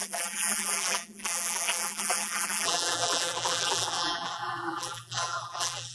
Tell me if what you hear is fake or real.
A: fake